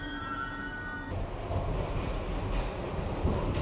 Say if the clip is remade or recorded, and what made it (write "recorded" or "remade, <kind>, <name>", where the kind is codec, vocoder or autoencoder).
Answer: recorded